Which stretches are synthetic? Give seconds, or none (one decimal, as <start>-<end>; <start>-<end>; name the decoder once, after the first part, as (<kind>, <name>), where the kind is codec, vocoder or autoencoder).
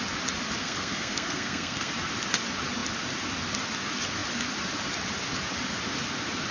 0.6-1.9 (codec, SNAC)